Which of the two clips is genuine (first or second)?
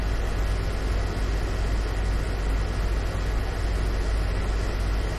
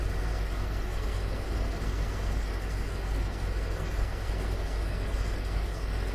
first